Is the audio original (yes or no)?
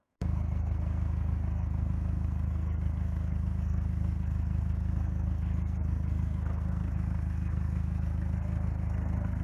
no